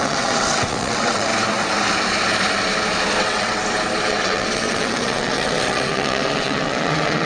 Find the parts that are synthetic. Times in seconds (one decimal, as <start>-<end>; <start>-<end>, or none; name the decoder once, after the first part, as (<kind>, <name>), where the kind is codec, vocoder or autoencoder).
0.0-1.3 (vocoder, WaveNeXt); 3.2-3.6; 4.1-7.3